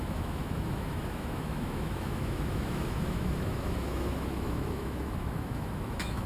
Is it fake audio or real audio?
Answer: fake